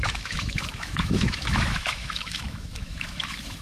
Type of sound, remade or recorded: remade